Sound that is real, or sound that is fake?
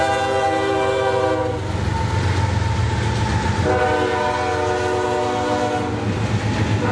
real